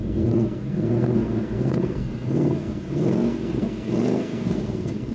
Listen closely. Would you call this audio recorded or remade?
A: remade